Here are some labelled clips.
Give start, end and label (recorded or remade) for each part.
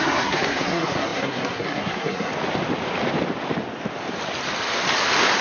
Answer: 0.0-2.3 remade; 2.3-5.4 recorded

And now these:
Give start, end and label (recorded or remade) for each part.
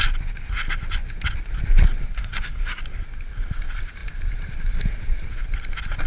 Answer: 0.0-2.0 recorded; 2.0-2.8 remade; 2.8-6.1 recorded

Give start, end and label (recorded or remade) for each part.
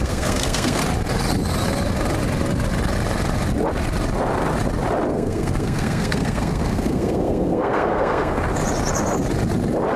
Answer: 0.0-0.8 remade; 0.8-5.1 recorded; 5.1-8.4 remade; 8.4-10.0 recorded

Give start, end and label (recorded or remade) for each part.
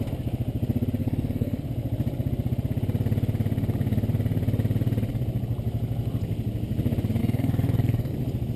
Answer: 0.0-1.0 recorded; 1.0-1.6 remade; 1.6-7.2 recorded; 7.2-8.1 remade; 8.1-8.6 recorded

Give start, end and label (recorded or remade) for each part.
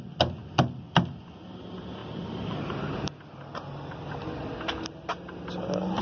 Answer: 0.0-6.0 recorded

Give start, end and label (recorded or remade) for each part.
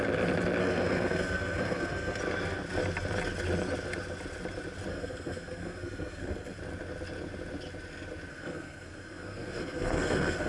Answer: 0.0-0.6 recorded; 0.6-2.2 remade; 2.2-4.9 recorded; 4.9-6.6 remade; 6.6-8.3 recorded; 8.3-10.5 remade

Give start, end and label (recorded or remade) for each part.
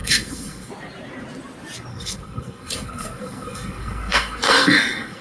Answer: 0.0-0.7 remade; 0.7-1.9 recorded; 1.9-5.2 remade